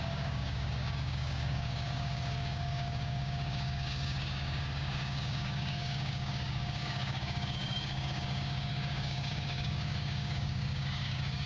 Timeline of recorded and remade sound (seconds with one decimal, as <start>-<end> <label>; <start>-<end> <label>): 0.0-11.5 remade